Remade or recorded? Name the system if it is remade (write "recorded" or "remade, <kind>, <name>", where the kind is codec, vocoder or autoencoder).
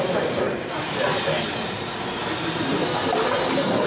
recorded